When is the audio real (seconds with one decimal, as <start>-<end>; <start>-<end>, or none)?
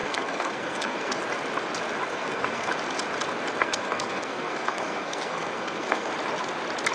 1.2-2.1; 2.7-3.6; 6.1-6.9